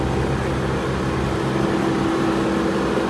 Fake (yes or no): no